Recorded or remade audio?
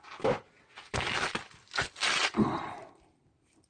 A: recorded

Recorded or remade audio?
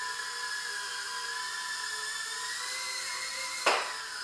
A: recorded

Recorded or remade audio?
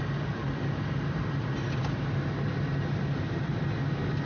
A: recorded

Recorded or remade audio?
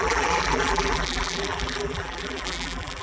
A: remade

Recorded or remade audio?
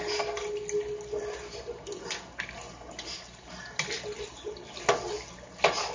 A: recorded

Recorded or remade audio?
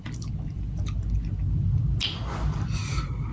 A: recorded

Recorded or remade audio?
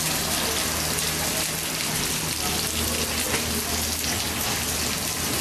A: recorded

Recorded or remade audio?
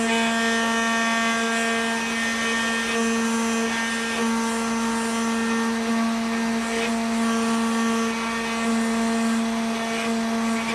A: recorded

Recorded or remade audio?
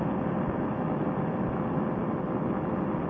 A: recorded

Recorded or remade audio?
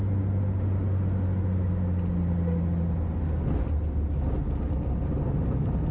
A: recorded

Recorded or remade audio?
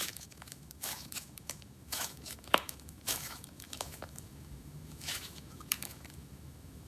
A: remade